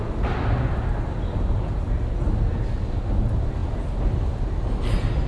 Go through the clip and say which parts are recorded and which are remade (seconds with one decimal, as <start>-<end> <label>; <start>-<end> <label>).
0.0-5.3 recorded